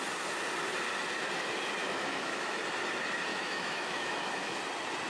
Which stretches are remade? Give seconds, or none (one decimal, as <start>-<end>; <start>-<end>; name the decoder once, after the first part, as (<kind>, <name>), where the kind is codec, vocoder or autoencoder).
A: 1.8-2.6 (autoencoder, DAC-VAE); 3.3-4.6